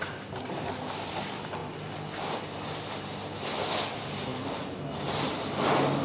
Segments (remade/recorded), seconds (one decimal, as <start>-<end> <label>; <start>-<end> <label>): 0.0-6.0 recorded